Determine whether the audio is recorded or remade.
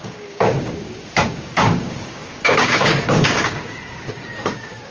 remade